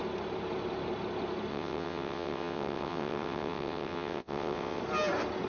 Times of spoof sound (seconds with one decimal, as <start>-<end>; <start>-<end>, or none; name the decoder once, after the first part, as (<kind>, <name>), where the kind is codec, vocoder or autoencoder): 1.5-4.8 (vocoder, WaveNeXt)